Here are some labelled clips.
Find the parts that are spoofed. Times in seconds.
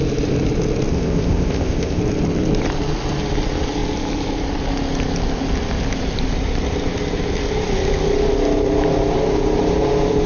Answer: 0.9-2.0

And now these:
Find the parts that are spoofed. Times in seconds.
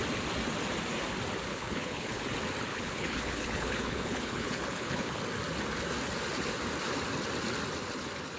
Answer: 1.5-2.2; 2.7-5.2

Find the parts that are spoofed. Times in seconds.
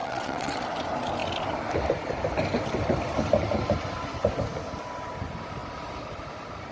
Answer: 0.0-0.6